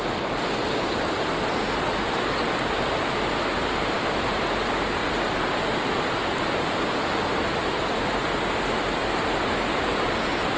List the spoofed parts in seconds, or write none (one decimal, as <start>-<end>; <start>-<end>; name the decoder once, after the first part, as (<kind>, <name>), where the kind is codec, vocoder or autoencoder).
none